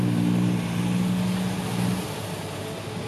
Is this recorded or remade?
recorded